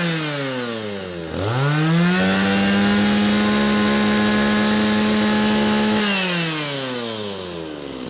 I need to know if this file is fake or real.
real